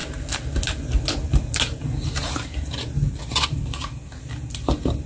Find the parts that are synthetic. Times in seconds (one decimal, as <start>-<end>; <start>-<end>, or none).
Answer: none